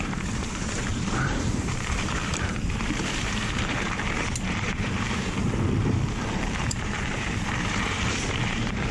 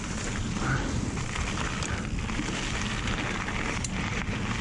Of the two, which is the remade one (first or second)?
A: first